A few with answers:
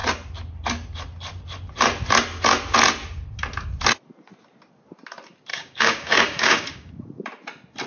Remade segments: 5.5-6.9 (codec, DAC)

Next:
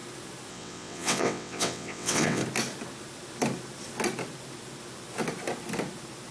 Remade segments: 0.5-2.4 (vocoder, WaveNeXt)

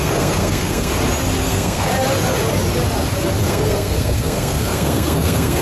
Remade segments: 0.0-0.9 (codec, SNAC); 1.4-1.9; 3.4-5.6

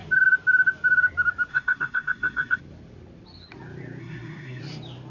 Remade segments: 1.5-2.6 (codec, SNAC); 4.0-4.6